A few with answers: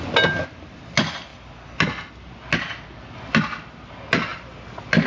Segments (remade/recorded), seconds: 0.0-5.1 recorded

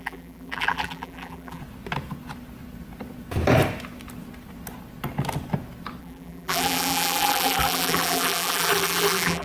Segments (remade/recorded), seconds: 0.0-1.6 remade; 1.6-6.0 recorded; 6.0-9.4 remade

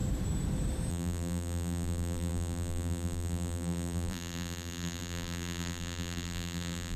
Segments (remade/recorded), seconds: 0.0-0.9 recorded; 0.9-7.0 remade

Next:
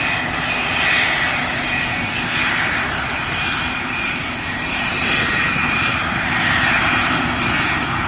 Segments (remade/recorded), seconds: 0.0-2.3 recorded; 2.3-7.2 remade; 7.2-8.1 recorded

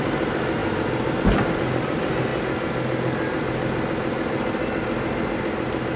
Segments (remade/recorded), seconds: 0.0-6.0 recorded

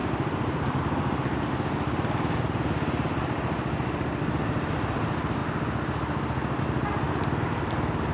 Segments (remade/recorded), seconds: 0.0-0.8 remade; 0.8-8.1 recorded

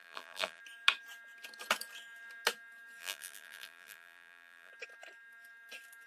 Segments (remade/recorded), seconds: 0.0-0.6 remade; 0.6-3.0 recorded; 3.0-4.7 remade; 4.7-6.1 recorded